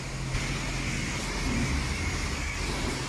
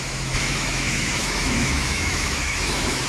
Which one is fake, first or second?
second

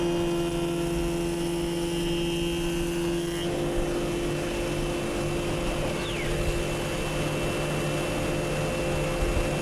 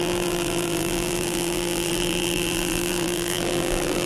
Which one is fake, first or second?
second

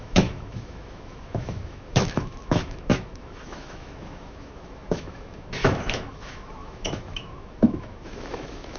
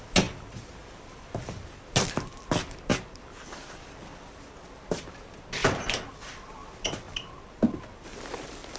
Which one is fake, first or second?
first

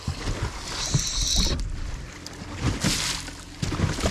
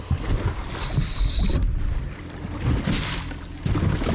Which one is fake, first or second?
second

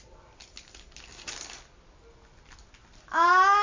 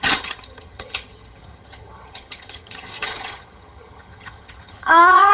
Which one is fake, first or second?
second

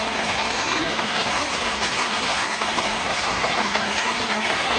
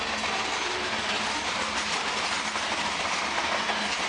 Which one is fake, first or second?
first